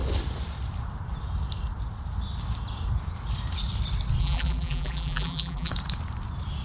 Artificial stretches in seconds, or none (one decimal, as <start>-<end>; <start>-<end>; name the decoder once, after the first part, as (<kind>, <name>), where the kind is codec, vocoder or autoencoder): 4.2-5.7 (vocoder, BigVGAN v2)